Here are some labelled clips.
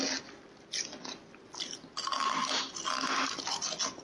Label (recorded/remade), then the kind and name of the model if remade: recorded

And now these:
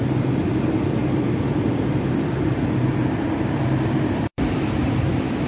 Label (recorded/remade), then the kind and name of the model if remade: remade, vocoder, BigVGAN v2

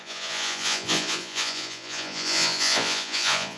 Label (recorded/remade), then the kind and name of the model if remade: remade, vocoder, Vocos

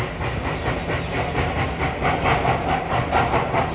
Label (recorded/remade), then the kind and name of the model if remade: recorded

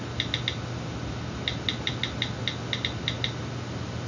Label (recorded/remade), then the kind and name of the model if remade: recorded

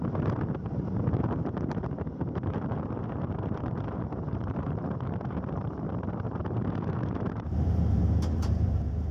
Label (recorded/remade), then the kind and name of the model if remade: remade, vocoder, BigVGAN v2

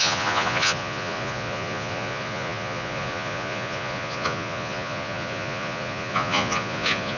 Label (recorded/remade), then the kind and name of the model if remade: remade, vocoder, Vocos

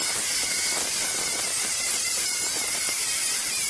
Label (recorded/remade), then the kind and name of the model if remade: recorded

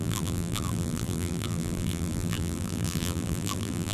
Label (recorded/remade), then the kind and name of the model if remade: remade, vocoder, BigVGAN v2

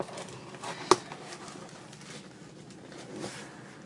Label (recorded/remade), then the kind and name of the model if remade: recorded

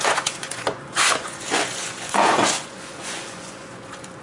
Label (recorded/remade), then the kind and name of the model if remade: remade, vocoder, Vocos